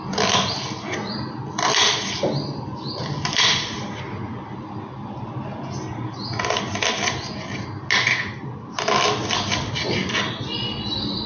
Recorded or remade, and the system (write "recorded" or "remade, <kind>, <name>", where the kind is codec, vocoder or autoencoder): recorded